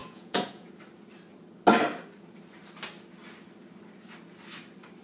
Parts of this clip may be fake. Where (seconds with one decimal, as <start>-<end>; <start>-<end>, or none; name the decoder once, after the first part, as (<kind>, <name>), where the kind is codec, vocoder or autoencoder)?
0.0-0.7 (vocoder, Vocos)